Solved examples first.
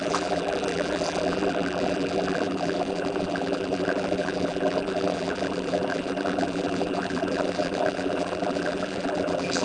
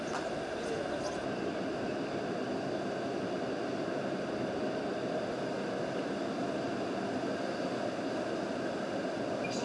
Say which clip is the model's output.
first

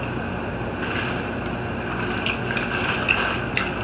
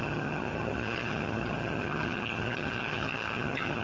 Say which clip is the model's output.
second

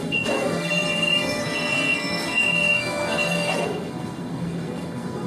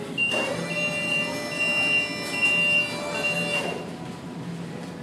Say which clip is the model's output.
first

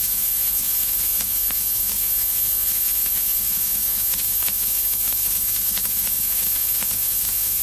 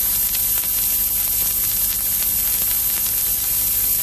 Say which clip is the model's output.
first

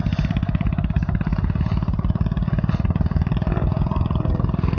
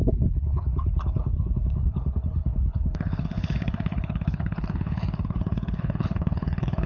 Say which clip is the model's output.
second